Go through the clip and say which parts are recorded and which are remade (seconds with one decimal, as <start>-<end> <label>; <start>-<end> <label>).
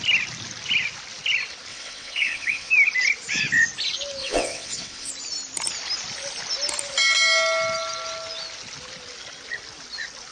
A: 0.0-1.7 recorded; 1.7-2.7 remade; 2.7-4.2 recorded; 4.2-5.1 remade; 5.1-10.3 recorded